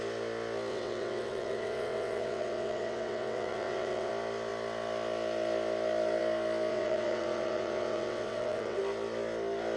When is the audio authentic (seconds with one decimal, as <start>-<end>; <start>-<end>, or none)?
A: 0.0-0.7; 4.1-6.7; 8.8-9.8